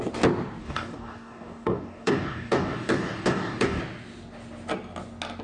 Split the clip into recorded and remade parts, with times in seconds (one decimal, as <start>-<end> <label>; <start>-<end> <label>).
0.0-0.6 recorded; 0.6-3.8 remade; 3.8-5.4 recorded